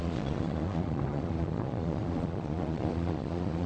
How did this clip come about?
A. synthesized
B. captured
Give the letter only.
A